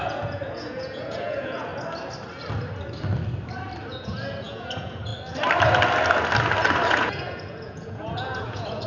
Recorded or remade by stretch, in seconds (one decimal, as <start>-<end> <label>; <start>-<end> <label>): 0.0-1.7 remade; 1.7-3.9 recorded; 3.9-5.1 remade; 5.1-6.9 recorded; 6.9-8.9 remade

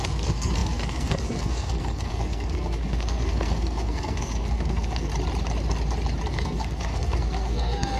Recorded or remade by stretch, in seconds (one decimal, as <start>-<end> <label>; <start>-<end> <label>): 0.0-5.1 remade; 5.1-6.3 recorded; 6.3-8.0 remade

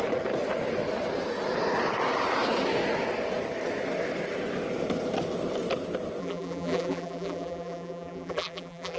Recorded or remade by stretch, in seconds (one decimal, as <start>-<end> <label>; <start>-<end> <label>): 0.0-6.2 recorded; 6.2-9.0 remade

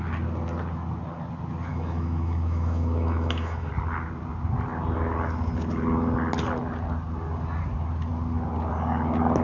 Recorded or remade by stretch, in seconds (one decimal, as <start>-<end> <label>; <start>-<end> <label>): 0.0-1.7 recorded; 1.7-3.7 remade; 3.7-9.4 recorded